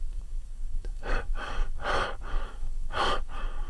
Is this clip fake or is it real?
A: fake